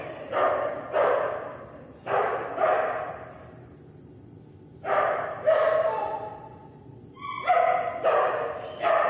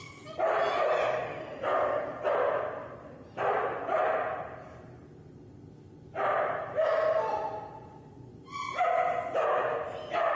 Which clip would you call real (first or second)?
second